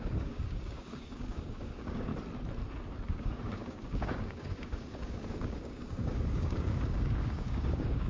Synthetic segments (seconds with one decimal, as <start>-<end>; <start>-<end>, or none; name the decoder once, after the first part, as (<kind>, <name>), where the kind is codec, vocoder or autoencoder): 0.0-2.1 (codec, DAC); 3.1-8.1